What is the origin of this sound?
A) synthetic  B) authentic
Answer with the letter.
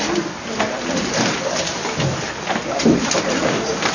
B